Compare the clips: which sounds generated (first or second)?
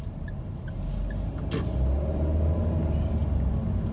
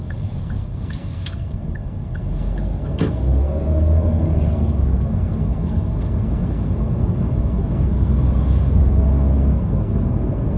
second